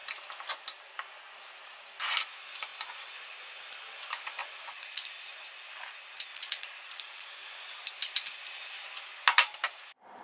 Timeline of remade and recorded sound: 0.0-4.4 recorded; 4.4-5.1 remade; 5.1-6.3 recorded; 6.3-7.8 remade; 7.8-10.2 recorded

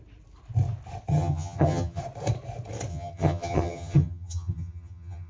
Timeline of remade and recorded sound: 0.0-1.1 recorded; 1.1-2.0 remade; 2.0-2.9 recorded; 2.9-5.3 remade

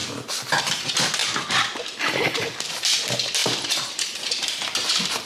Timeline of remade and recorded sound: 0.0-1.2 recorded; 1.2-2.7 remade; 2.7-3.4 recorded; 3.4-5.3 remade

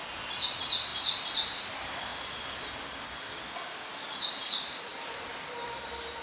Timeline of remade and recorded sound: 0.0-0.9 recorded; 0.9-1.7 remade; 1.7-2.1 recorded; 2.1-3.4 remade; 3.4-4.9 recorded; 4.9-6.2 remade

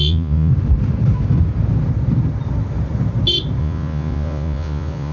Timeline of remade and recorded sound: 0.0-0.5 remade; 0.5-3.6 recorded; 3.6-5.1 remade